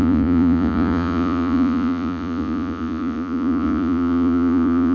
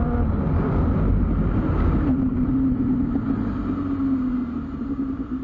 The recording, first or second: second